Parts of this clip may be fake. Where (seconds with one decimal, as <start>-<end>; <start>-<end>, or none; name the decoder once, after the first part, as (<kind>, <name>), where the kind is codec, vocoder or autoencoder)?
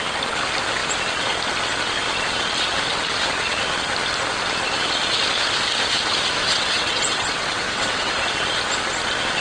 6.4-8.2 (vocoder, WaveNeXt)